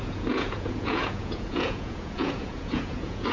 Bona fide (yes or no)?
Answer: no